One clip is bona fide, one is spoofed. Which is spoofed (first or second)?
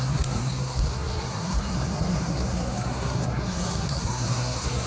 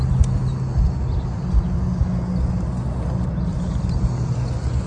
first